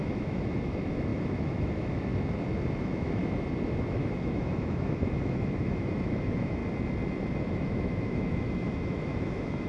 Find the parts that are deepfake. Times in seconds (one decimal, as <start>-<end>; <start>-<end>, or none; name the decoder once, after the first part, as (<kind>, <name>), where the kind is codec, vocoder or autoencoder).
0.0-2.1 (autoencoder, DAC-VAE); 2.8-3.2; 3.9-6.6; 7.5-9.7